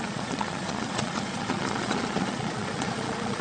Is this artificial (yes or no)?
yes